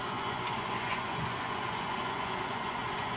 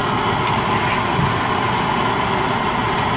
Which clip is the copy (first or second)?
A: first